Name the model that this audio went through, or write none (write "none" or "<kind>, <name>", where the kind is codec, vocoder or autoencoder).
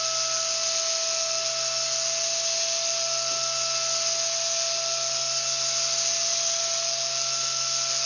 none